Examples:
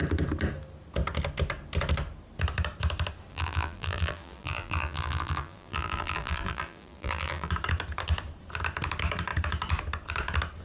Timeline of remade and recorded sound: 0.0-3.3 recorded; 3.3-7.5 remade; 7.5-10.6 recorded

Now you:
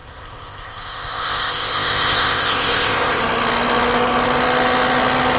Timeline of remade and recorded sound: 0.0-3.2 remade; 3.2-5.4 recorded

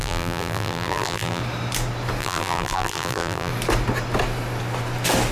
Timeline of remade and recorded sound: 0.0-1.4 remade; 1.4-2.2 recorded; 2.2-3.5 remade; 3.5-5.3 recorded

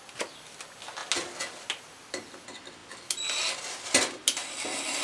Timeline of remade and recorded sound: 0.0-5.0 recorded

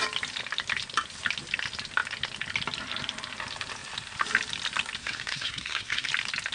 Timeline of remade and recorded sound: 0.0-5.0 recorded; 5.0-6.1 remade; 6.1-6.5 recorded

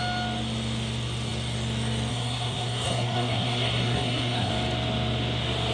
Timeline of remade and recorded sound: 0.0-2.1 recorded; 2.1-4.5 remade; 4.5-5.7 recorded

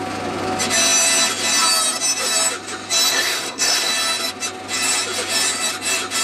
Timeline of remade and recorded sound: 0.0-3.1 recorded; 3.1-3.9 remade; 3.9-6.2 recorded